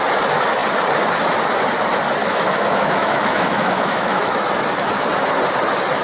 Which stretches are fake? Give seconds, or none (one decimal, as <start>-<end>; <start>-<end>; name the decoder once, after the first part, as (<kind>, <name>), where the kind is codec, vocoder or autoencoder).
2.2-4.4 (autoencoder, DAC-VAE)